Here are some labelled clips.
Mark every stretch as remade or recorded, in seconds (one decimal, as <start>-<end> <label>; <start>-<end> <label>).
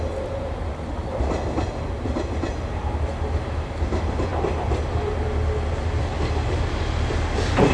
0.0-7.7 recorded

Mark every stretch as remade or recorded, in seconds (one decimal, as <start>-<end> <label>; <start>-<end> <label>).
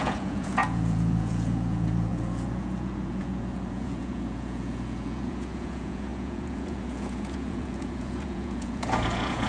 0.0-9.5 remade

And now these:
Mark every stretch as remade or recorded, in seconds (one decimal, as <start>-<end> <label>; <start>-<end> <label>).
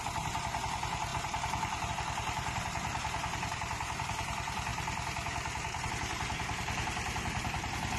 0.0-2.9 remade; 2.9-3.5 recorded; 3.5-8.0 remade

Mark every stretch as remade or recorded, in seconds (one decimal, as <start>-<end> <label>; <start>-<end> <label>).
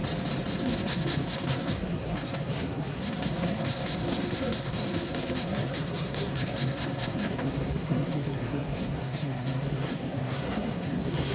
0.0-0.6 recorded; 0.6-11.3 remade